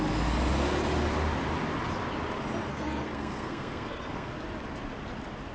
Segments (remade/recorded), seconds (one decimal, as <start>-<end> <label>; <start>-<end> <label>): 0.0-2.7 recorded; 2.7-4.3 remade; 4.3-5.5 recorded